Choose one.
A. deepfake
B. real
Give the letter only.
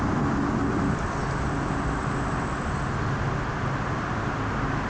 B